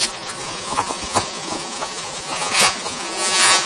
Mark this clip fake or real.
fake